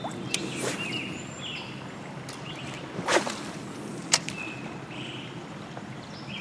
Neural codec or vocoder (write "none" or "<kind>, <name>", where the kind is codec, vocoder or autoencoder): none